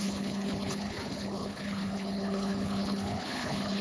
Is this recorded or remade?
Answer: remade